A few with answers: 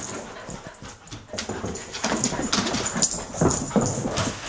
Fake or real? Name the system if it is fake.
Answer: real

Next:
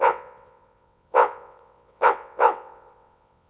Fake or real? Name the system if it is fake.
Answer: fake, vocoder, WaveNeXt